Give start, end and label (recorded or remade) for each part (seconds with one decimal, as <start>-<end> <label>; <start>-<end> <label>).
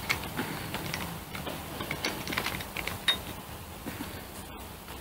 0.0-2.9 remade; 2.9-4.0 recorded; 4.0-5.0 remade